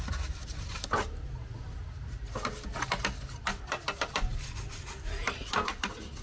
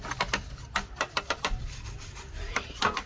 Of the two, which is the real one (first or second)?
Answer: first